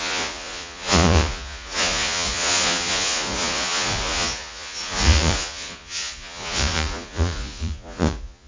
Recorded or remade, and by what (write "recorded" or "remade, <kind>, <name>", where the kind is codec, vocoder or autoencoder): remade, vocoder, Vocos